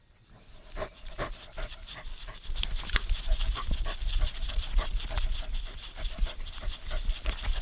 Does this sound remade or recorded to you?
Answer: recorded